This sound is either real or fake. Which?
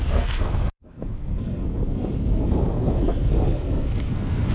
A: fake